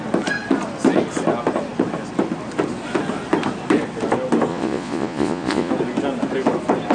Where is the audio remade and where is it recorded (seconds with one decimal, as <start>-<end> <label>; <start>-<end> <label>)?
0.0-4.5 recorded; 4.5-5.7 remade; 5.7-6.9 recorded